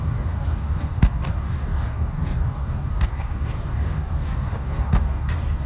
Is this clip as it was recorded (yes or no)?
no